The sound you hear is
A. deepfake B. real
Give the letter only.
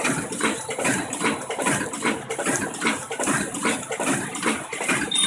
B